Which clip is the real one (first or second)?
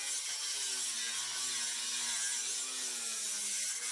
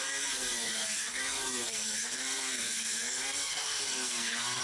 first